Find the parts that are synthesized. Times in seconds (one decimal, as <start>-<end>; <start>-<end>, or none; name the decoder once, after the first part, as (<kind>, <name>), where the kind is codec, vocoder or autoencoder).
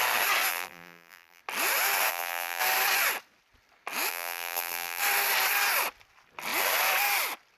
0.5-1.4 (vocoder, BigVGAN v2); 2.1-2.6; 4.1-5.0